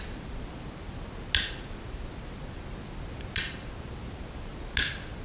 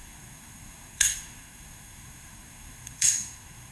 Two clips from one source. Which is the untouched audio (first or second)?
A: first